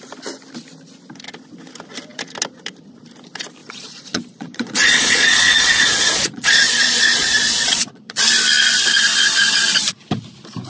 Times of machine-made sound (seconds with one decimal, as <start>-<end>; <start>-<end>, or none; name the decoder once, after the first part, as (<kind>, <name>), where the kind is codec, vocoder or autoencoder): 3.6-8.2 (vocoder, Vocos)